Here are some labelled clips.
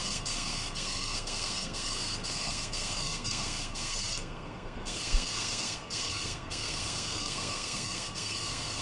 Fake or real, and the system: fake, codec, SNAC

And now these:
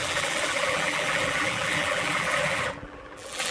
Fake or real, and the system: fake, vocoder, BigVGAN v2